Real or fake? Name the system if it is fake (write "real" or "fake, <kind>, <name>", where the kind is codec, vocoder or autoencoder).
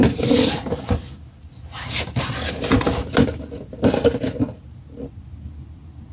real